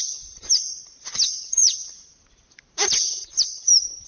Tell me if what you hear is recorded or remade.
remade